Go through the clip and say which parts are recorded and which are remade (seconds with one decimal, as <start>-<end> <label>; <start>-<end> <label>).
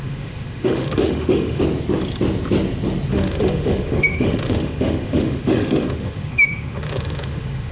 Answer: 0.0-1.6 remade; 1.6-3.1 recorded; 3.1-7.7 remade